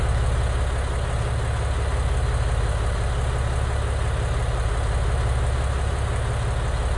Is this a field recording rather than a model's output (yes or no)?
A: yes